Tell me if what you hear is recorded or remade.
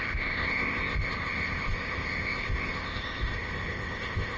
remade